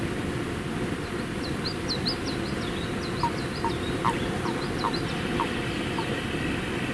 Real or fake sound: real